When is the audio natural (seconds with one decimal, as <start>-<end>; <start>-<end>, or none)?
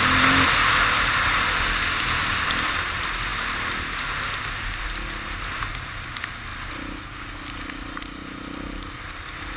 0.0-9.6